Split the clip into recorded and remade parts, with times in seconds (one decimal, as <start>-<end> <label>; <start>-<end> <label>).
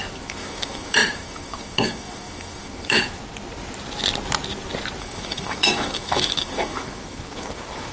0.0-3.2 remade; 3.2-5.0 recorded; 5.0-7.9 remade